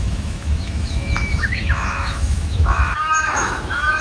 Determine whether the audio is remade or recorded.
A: remade